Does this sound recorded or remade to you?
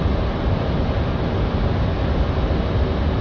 recorded